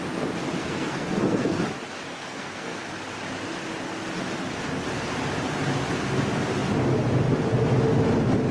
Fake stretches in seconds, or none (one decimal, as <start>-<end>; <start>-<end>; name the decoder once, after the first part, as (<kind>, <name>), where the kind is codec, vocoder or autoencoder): 0.6-1.6 (codec, SNAC); 2.1-2.9